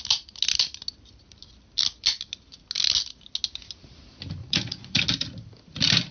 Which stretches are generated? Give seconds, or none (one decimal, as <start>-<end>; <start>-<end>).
4.4-5.0